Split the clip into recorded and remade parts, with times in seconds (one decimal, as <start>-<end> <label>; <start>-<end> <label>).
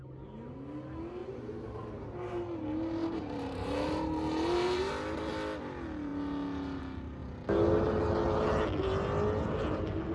0.0-1.2 recorded; 1.2-4.9 remade; 4.9-10.1 recorded